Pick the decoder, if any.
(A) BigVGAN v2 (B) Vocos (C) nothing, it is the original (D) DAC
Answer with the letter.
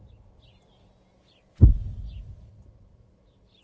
C